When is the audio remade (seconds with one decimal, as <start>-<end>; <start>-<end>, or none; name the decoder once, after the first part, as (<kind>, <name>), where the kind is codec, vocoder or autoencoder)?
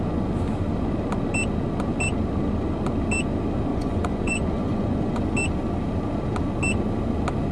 3.7-5.2 (vocoder, Vocos)